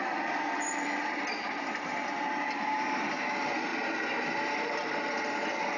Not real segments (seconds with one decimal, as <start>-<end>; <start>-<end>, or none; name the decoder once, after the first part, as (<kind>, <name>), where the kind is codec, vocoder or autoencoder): 0.0-3.7 (vocoder, BigVGAN v2)